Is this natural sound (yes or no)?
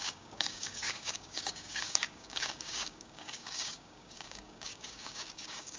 no